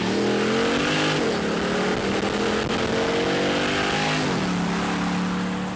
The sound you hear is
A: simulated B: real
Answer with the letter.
B